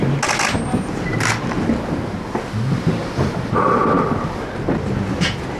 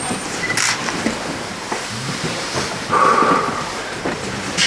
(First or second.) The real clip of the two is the first